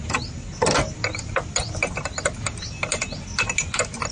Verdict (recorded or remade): recorded